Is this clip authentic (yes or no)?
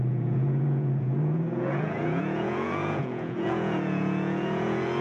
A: no